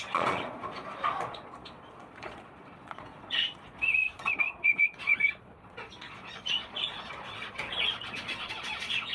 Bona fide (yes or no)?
no